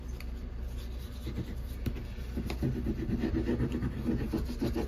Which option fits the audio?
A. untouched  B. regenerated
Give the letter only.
A